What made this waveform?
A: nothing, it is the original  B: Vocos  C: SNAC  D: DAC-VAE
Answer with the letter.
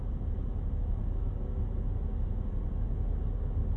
A